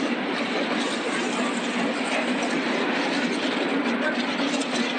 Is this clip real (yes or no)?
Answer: no